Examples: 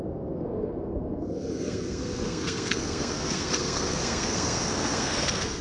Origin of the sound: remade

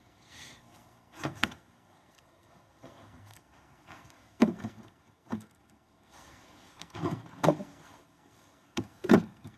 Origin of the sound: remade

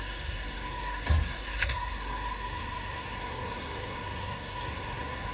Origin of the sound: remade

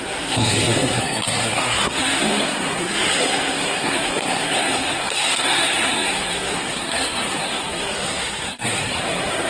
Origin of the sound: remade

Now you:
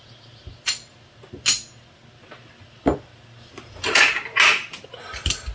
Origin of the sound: recorded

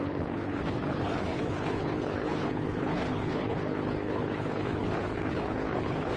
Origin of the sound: remade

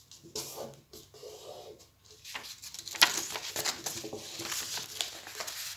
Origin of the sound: recorded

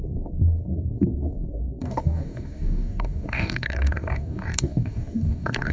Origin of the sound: remade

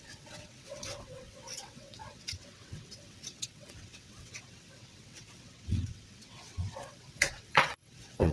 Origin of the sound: remade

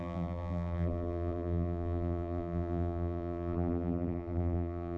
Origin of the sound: remade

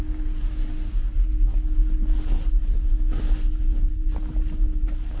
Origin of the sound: recorded